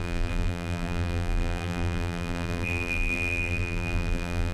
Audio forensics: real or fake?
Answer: fake